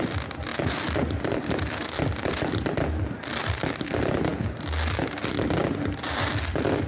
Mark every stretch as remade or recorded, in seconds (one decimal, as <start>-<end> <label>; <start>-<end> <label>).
0.0-6.9 recorded